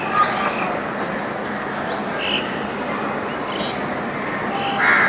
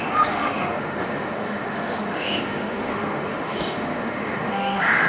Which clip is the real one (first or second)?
first